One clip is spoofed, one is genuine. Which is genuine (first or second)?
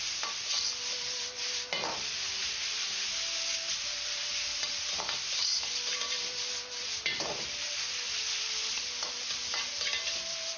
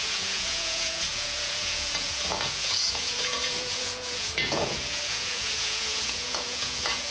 first